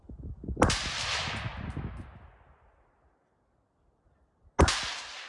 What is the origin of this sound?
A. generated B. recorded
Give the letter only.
B